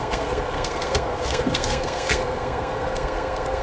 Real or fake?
fake